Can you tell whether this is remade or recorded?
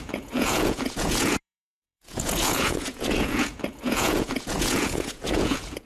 remade